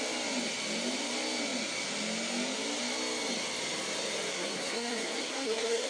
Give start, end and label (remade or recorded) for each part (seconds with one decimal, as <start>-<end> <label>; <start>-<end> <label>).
0.0-4.3 recorded; 4.3-5.9 remade

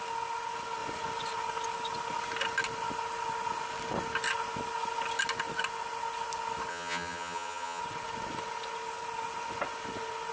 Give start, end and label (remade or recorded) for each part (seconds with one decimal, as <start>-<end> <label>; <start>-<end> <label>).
0.0-6.7 recorded; 6.7-7.8 remade; 7.8-10.3 recorded

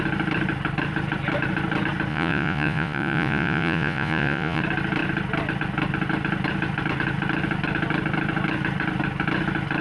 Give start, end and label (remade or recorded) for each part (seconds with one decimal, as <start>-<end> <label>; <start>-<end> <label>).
0.0-2.1 recorded; 2.1-4.6 remade; 4.6-9.8 recorded